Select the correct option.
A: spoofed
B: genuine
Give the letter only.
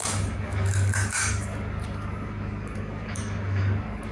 A